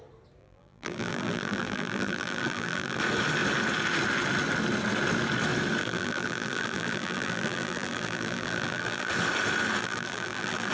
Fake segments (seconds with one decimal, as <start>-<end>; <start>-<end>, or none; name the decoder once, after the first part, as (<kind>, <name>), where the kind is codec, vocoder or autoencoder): 0.4-3.0 (vocoder, BigVGAN v2); 5.8-9.1; 9.8-10.7